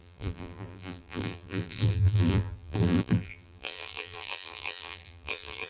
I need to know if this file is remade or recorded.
remade